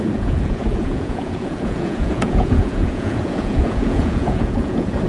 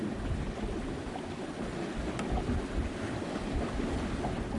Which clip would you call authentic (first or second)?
second